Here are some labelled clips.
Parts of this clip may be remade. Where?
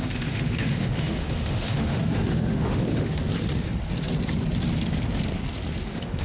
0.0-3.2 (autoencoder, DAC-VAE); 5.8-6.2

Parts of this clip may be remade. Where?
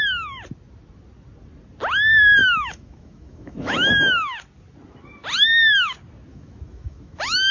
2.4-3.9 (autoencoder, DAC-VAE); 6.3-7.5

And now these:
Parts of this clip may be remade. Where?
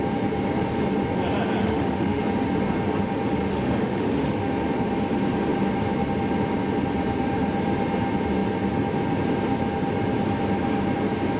1.6-2.2 (autoencoder, DAC-VAE); 3.5-4.5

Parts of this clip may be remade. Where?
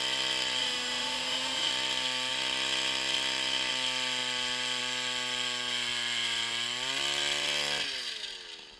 0.6-1.7 (autoencoder, DAC-VAE)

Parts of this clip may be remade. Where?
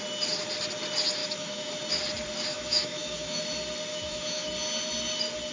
1.2-1.7 (autoencoder, DAC-VAE); 2.5-3.4; 3.9-4.5